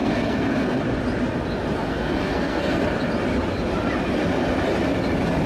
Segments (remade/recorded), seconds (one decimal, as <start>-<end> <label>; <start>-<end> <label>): 0.0-0.8 remade; 0.8-1.9 recorded; 1.9-2.8 remade; 2.8-5.5 recorded